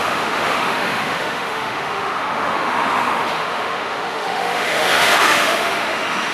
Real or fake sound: fake